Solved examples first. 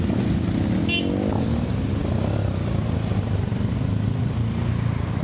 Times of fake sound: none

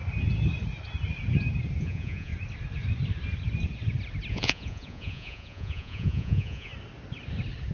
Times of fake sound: 1.8-2.3; 4.3-6.7

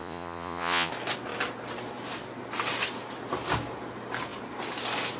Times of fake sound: 0.0-0.9

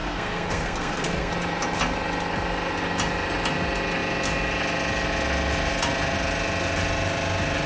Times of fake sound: 0.0-1.3

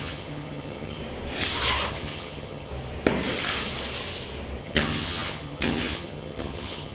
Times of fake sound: 0.0-1.0; 1.9-2.7; 4.6-6.9

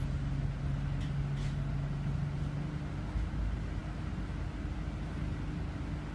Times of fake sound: none

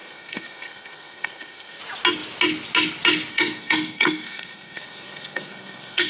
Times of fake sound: 0.0-1.8; 3.3-6.1

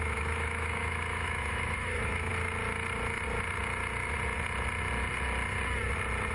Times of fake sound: 0.0-2.3